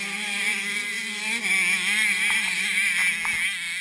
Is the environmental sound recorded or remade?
recorded